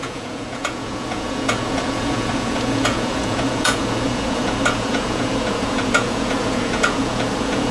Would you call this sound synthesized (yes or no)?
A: yes